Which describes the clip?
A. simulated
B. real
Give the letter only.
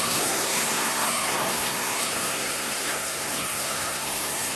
A